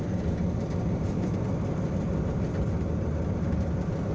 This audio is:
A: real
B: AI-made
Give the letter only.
A